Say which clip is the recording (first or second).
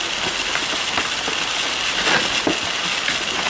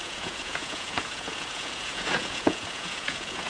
first